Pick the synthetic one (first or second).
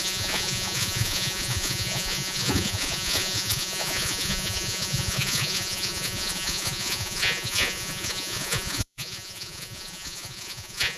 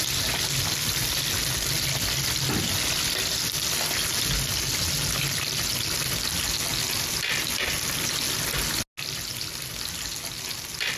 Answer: first